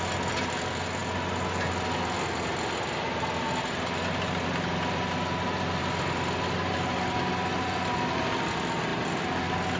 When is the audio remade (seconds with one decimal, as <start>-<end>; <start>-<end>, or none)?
none